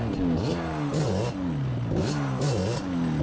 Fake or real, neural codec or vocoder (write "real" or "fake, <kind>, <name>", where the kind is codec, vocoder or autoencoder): real